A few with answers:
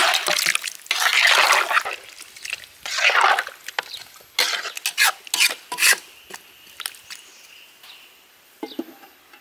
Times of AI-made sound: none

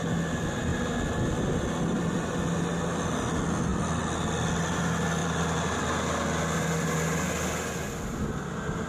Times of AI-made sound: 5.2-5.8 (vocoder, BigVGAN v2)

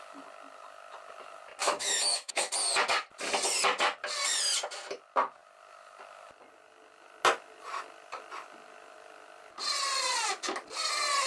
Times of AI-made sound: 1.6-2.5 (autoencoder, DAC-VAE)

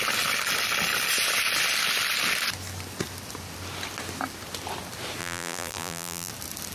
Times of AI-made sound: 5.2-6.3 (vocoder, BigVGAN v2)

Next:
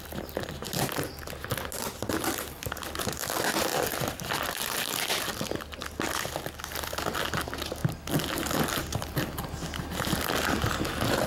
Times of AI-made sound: 3.7-5.2 (vocoder, BigVGAN v2)

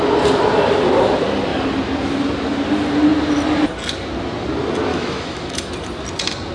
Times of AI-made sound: 4.9-5.7 (autoencoder, DAC-VAE)